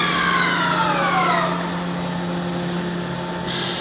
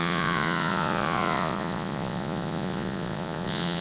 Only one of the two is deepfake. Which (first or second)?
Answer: second